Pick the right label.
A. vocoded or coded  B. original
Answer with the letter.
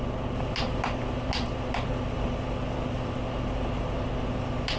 B